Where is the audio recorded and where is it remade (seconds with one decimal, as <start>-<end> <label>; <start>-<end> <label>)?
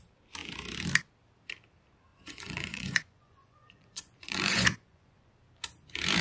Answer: 0.0-2.1 recorded; 2.1-5.3 remade; 5.3-6.2 recorded